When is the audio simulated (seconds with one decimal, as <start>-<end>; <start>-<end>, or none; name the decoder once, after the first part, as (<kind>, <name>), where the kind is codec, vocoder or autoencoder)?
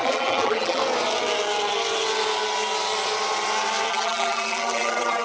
0.0-0.8 (vocoder, BigVGAN v2); 3.9-5.2